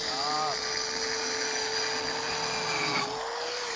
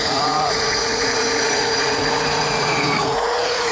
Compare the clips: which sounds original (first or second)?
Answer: first